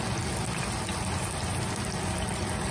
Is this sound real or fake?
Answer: real